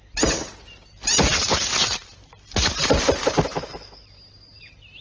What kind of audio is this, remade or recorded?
recorded